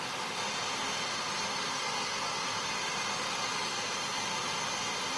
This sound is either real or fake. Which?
real